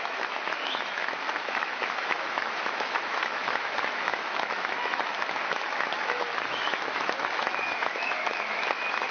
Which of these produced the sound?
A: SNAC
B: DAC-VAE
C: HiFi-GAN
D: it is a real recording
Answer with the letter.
B